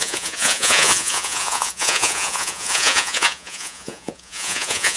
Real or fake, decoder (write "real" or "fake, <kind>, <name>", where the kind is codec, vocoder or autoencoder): fake, vocoder, Vocos